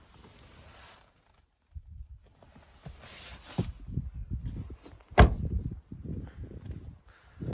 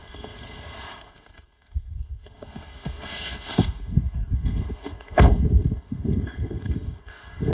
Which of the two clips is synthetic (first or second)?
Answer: second